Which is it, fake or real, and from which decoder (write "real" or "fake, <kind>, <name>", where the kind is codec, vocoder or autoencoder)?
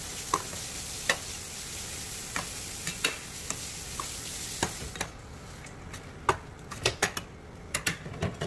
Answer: real